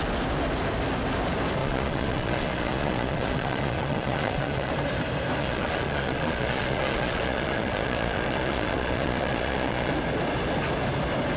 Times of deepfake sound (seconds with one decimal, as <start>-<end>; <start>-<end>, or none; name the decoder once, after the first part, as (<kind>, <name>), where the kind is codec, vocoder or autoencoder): 1.6-4.7 (vocoder, Vocos); 5.4-9.9